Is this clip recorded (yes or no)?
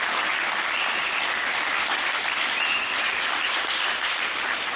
no